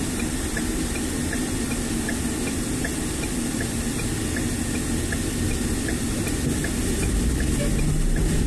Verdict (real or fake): real